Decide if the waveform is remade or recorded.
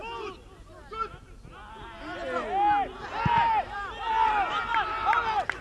recorded